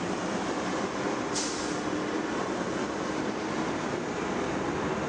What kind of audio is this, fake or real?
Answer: real